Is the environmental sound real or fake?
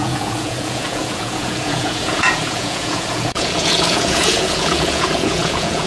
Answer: fake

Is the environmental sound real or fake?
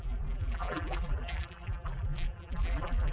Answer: fake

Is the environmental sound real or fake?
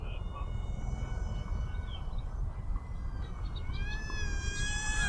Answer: fake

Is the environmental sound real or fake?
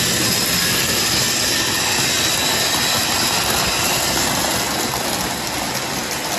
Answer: real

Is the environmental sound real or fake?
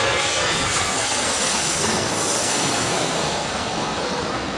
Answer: fake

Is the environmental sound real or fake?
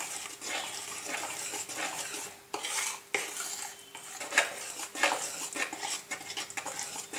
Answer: real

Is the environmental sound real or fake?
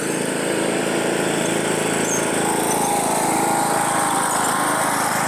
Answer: fake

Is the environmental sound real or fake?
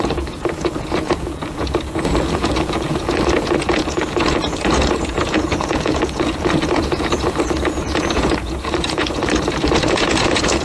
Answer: fake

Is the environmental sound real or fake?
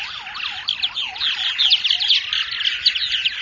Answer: real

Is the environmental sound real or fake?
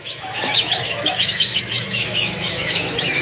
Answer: fake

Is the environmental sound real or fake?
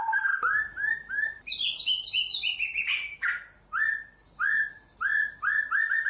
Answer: real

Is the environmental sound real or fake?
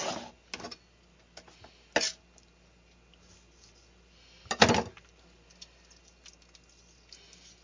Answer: real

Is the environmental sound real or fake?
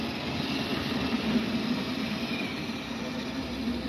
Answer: real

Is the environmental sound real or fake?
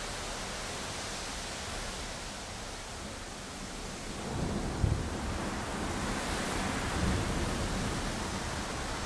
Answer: real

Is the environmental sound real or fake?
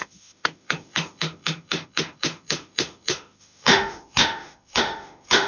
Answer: fake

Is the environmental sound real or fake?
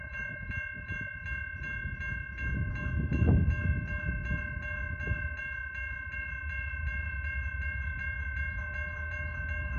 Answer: real